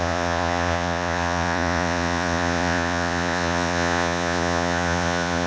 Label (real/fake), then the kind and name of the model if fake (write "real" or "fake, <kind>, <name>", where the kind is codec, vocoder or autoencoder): fake, vocoder, Vocos